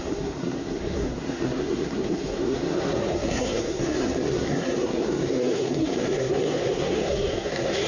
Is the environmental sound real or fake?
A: fake